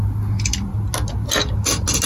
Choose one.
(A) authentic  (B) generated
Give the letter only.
A